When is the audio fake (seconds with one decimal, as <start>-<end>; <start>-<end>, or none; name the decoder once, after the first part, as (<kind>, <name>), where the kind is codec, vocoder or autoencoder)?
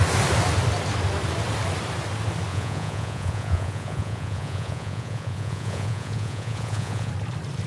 2.5-7.1 (vocoder, Vocos)